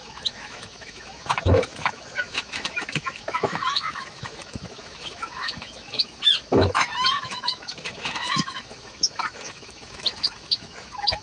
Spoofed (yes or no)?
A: yes